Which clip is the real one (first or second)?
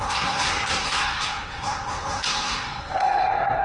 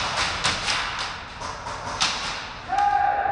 second